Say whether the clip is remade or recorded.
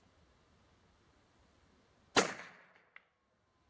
recorded